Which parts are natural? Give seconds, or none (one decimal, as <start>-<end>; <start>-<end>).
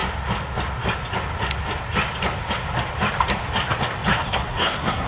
0.0-4.1